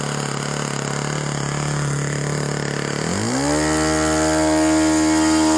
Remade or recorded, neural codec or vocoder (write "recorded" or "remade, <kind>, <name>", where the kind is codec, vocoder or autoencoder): recorded